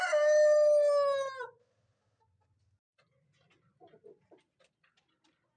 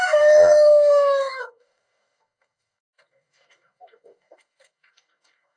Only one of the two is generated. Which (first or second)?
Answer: second